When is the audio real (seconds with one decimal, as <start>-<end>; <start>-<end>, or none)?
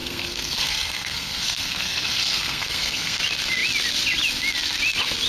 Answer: 3.2-5.3